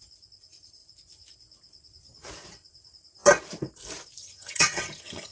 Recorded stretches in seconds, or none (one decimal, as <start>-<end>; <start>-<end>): 0.0-4.2